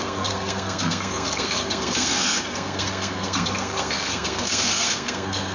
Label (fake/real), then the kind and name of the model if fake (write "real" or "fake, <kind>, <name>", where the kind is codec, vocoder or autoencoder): fake, codec, SNAC